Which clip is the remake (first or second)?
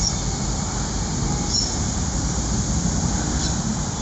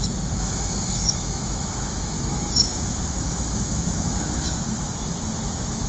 second